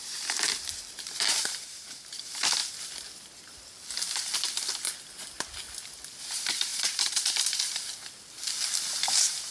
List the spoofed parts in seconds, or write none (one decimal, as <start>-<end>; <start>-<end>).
0.0-2.6; 6.2-7.9; 8.9-9.5